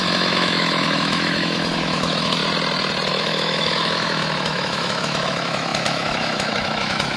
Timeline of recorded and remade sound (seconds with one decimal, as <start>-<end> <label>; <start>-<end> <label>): 0.0-2.4 remade; 2.4-3.1 recorded; 3.1-7.2 remade